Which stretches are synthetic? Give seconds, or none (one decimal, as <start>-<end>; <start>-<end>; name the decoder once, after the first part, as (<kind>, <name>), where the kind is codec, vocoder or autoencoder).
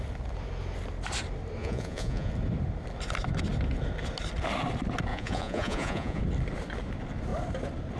1.6-2.3 (vocoder, Vocos); 5.1-6.2